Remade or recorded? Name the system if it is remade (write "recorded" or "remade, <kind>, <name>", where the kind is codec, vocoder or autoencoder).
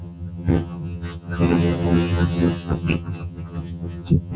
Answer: remade, vocoder, HiFi-GAN